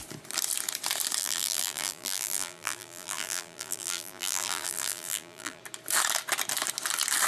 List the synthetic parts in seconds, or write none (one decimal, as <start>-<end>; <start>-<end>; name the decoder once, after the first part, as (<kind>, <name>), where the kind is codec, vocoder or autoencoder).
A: 1.2-5.6 (vocoder, BigVGAN v2)